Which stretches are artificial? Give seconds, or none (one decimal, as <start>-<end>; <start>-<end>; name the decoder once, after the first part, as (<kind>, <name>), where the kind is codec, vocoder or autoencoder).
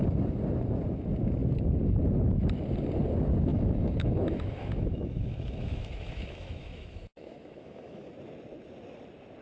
3.5-8.1 (autoencoder, DAC-VAE)